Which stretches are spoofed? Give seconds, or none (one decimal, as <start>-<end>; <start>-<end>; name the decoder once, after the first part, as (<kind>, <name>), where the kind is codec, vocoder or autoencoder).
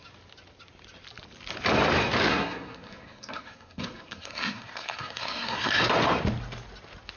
2.3-5.8 (codec, SNAC)